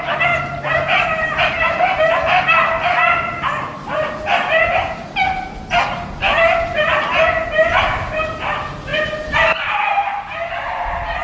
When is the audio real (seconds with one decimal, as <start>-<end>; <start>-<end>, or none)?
0.0-11.2